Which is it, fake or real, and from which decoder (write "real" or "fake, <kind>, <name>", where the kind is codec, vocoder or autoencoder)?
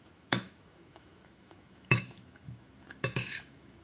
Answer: fake, autoencoder, DAC-VAE